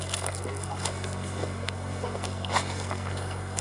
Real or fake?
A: fake